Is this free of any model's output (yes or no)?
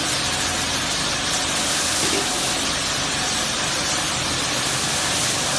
yes